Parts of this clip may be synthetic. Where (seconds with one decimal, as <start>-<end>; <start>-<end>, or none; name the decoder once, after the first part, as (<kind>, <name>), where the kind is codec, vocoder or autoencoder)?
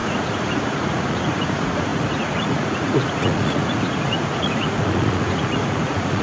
0.0-6.2 (vocoder, Vocos)